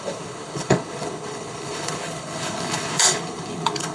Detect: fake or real fake